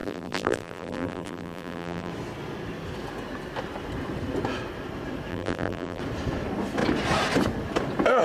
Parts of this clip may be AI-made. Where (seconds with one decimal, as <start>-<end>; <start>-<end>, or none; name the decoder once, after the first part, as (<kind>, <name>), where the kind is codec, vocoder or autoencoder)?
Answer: 0.0-2.1 (vocoder, BigVGAN v2); 5.3-6.0

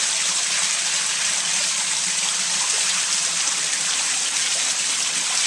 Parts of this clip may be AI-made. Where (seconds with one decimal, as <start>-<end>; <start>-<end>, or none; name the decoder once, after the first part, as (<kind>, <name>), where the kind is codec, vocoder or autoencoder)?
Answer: 1.5-4.8 (vocoder, BigVGAN v2)

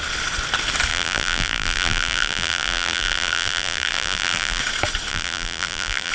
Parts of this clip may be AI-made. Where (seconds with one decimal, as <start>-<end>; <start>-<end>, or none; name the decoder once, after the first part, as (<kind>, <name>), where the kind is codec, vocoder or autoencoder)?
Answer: 0.9-4.6 (vocoder, BigVGAN v2); 5.1-6.1

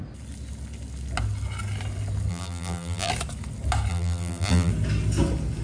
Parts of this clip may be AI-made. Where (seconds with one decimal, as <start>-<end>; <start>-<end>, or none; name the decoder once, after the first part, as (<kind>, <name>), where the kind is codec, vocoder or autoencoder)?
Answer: 2.3-3.1 (vocoder, BigVGAN v2); 3.9-4.7